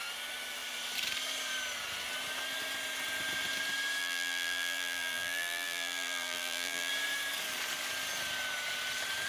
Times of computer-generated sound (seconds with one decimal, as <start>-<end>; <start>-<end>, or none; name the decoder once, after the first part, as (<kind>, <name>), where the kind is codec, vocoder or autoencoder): 4.0-6.9 (vocoder, BigVGAN v2)